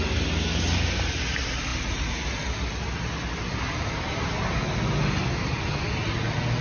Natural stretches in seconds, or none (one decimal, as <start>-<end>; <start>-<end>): 0.0-6.6